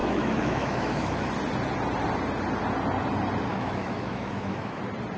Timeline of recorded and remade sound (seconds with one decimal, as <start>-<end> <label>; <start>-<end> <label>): 0.0-1.3 remade; 1.3-3.5 recorded; 3.5-4.8 remade; 4.8-5.2 recorded